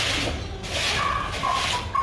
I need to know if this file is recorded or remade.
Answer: recorded